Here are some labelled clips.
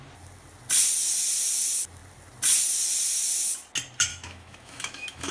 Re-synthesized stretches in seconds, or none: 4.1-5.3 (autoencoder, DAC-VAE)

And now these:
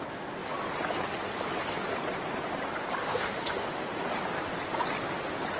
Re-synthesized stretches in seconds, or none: 3.0-3.9 (autoencoder, DAC-VAE)